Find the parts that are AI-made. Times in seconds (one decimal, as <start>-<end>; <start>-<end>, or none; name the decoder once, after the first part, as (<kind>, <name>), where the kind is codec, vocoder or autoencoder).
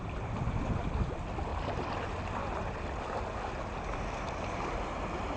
none